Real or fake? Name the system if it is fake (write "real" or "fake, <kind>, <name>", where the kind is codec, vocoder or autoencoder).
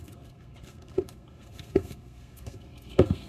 fake, codec, SNAC